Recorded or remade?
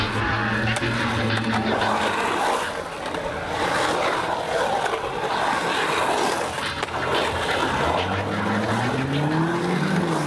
recorded